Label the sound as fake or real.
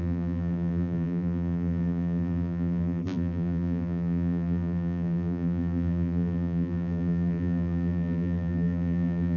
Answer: fake